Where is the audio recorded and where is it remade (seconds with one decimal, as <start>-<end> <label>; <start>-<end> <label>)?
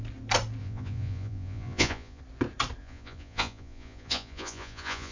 0.0-0.6 recorded; 0.6-2.2 remade; 2.2-2.8 recorded; 2.8-5.1 remade